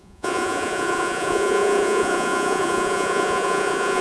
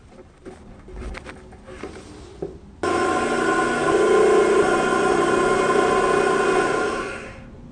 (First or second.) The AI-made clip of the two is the first